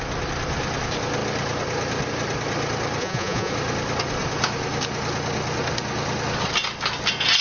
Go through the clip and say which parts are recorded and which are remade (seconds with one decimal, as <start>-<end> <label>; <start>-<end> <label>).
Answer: 0.0-3.0 recorded; 3.0-3.5 remade; 3.5-7.4 recorded